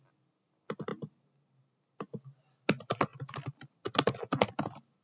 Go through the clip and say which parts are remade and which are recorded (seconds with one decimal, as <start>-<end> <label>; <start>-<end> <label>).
0.0-5.0 recorded